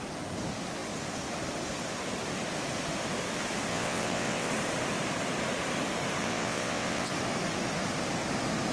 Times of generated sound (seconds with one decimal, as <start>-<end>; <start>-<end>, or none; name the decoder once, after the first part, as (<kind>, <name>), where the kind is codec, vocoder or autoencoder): 3.7-4.5 (vocoder, WaveNeXt); 6.2-7.1